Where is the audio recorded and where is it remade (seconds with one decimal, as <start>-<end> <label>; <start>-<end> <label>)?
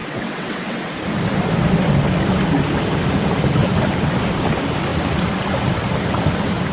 0.0-0.9 remade; 0.9-6.7 recorded